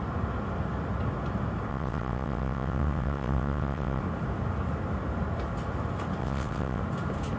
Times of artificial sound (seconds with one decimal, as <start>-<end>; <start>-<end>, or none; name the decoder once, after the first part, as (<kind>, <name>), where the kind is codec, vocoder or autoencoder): 1.7-4.0 (vocoder, WaveNeXt); 6.2-6.8